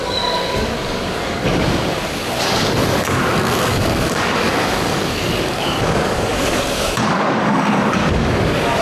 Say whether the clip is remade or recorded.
remade